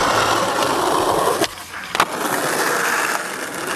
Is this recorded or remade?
recorded